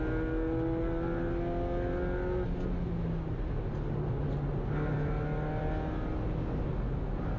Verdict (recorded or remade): recorded